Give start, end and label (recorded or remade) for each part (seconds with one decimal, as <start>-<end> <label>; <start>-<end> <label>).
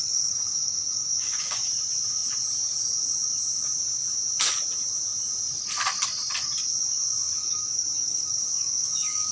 0.0-1.7 remade; 1.7-7.4 recorded; 7.4-9.3 remade